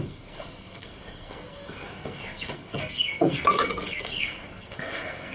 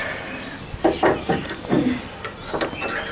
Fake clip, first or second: first